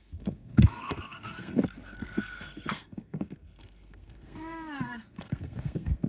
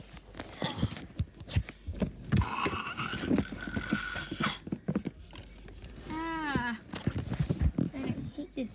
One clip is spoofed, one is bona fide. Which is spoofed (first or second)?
first